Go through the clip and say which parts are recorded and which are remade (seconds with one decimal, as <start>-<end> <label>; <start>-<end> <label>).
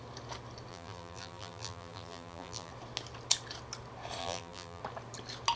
0.0-0.7 recorded; 0.7-2.7 remade; 2.7-4.2 recorded; 4.2-4.8 remade; 4.8-5.6 recorded